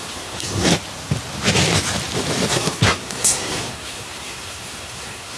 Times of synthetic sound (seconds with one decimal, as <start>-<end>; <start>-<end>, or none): 0.0-0.7; 2.5-5.4